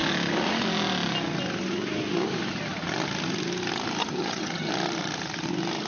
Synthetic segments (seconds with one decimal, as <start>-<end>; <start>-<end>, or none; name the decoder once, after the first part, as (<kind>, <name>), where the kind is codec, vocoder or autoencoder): 4.0-4.7 (vocoder, HiFi-GAN)